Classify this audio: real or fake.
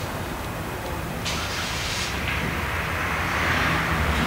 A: fake